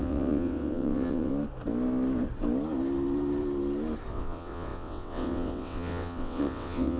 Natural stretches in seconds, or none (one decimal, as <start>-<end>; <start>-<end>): 1.3-4.1